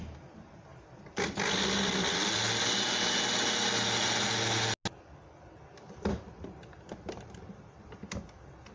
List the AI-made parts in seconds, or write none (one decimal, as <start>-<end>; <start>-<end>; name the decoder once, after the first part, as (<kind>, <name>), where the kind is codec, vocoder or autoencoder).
none